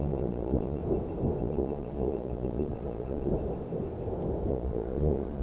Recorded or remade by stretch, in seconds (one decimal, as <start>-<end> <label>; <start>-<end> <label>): 0.0-0.8 remade; 0.8-1.4 recorded; 1.4-3.3 remade; 3.3-4.5 recorded; 4.5-5.4 remade